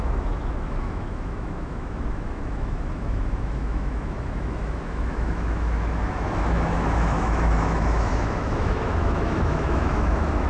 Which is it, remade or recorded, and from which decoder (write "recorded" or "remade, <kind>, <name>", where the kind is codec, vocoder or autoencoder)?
remade, autoencoder, DAC-VAE